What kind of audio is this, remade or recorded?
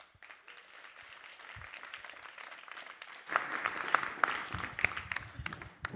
recorded